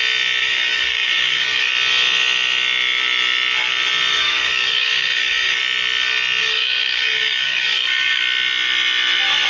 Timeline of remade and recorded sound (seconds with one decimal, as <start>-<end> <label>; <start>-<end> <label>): 0.0-0.4 recorded; 0.4-1.7 remade; 1.7-4.1 recorded; 4.1-5.6 remade; 5.6-6.4 recorded; 6.4-8.2 remade; 8.2-9.5 recorded